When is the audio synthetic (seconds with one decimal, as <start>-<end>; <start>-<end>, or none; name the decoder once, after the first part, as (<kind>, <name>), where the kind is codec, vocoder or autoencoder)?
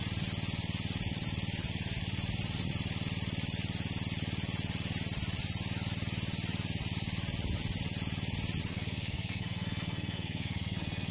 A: 8.7-11.1 (codec, SNAC)